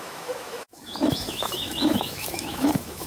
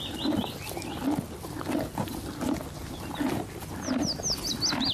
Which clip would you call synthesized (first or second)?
first